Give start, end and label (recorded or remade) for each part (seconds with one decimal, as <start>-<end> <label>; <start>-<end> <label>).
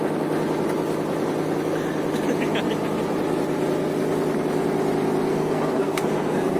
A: 0.0-5.3 recorded; 5.3-6.6 remade